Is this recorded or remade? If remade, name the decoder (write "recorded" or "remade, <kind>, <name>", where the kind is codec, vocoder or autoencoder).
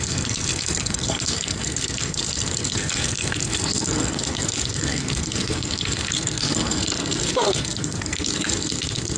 remade, codec, SNAC